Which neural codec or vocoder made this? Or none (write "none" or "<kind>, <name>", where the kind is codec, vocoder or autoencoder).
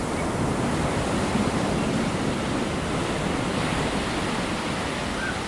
vocoder, BigVGAN v2